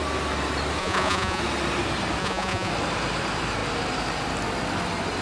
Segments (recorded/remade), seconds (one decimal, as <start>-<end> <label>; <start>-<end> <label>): 0.0-0.8 recorded; 0.8-1.4 remade; 1.4-2.2 recorded; 2.2-2.7 remade; 2.7-5.2 recorded